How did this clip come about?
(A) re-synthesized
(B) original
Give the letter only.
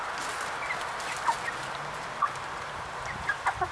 B